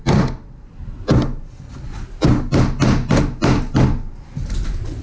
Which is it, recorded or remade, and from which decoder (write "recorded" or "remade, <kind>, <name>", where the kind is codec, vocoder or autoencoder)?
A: recorded